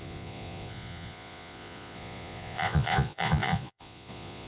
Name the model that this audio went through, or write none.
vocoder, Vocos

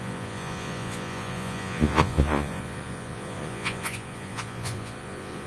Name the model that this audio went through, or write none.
vocoder, Vocos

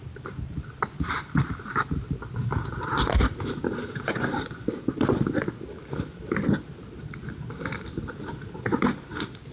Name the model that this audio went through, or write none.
none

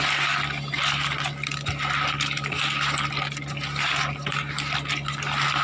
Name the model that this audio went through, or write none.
none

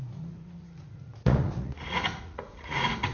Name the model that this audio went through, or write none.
vocoder, Vocos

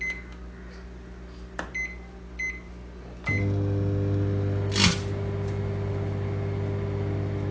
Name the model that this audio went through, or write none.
none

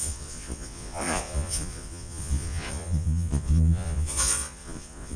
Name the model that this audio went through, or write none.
vocoder, Vocos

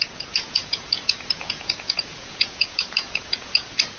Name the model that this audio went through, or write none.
vocoder, Vocos